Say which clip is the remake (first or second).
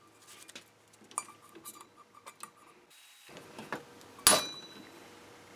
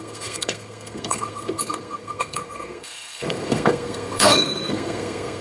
second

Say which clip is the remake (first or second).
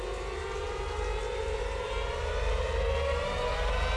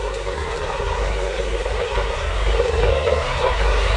second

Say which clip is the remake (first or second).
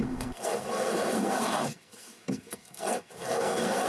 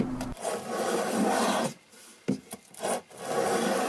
first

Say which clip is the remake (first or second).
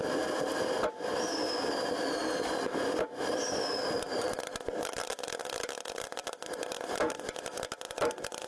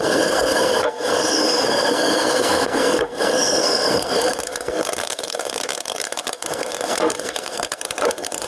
second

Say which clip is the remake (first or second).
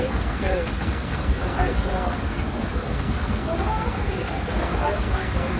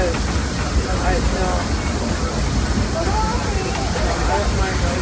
first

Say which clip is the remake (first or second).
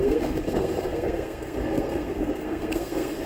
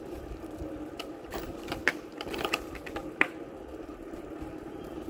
first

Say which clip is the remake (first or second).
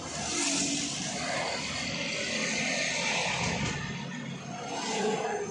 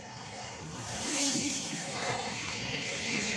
second